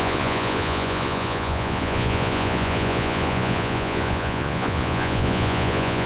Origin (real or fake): fake